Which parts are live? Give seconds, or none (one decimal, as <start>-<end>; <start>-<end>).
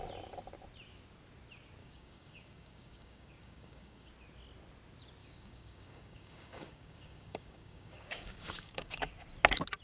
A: 0.0-1.8; 4.1-5.2; 9.1-9.8